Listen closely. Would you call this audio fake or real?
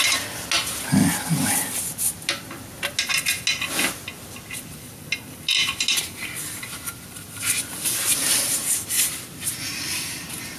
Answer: real